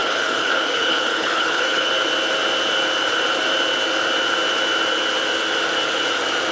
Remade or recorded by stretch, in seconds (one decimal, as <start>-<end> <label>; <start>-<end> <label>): 0.0-1.9 remade; 1.9-6.5 recorded